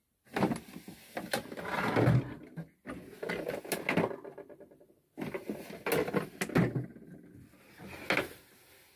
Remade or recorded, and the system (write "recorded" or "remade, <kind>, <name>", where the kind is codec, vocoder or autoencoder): recorded